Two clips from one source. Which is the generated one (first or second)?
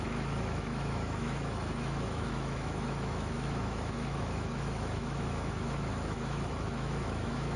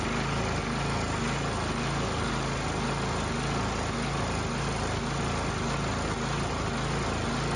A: first